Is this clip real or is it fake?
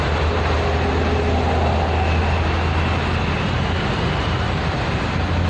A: real